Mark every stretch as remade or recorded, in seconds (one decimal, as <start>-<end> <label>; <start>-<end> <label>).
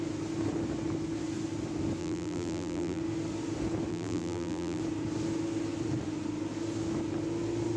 0.0-2.0 recorded; 2.0-3.0 remade; 3.0-3.9 recorded; 3.9-4.8 remade; 4.8-7.8 recorded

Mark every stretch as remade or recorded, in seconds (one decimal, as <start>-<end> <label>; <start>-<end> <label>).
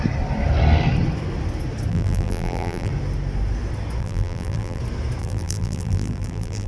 0.0-1.9 recorded; 1.9-2.9 remade; 2.9-4.0 recorded; 4.0-4.8 remade; 4.8-5.2 recorded; 5.2-6.7 remade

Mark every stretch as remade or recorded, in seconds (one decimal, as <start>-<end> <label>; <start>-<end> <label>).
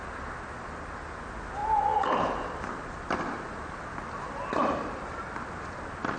0.0-6.2 recorded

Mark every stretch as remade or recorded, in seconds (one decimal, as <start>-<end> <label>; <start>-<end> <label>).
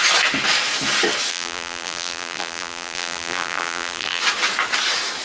0.0-1.3 recorded; 1.3-4.2 remade; 4.2-5.2 recorded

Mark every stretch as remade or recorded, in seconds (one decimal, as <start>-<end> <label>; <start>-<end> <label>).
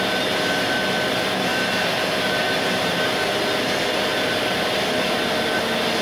0.0-1.5 recorded; 1.5-3.1 remade; 3.1-4.1 recorded; 4.1-4.9 remade; 4.9-6.0 recorded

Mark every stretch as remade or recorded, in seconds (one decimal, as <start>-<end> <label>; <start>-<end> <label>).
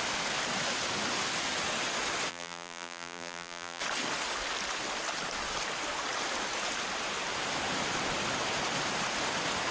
0.0-2.3 recorded; 2.3-3.8 remade; 3.8-9.7 recorded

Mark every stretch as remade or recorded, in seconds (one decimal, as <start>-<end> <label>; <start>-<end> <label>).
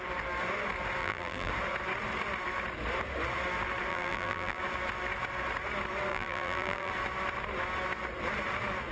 0.0-1.0 recorded; 1.0-1.5 remade; 1.5-3.9 recorded; 3.9-4.6 remade; 4.6-6.1 recorded; 6.1-6.9 remade; 6.9-8.9 recorded